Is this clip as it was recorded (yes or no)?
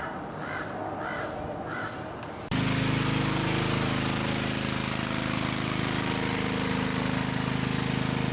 yes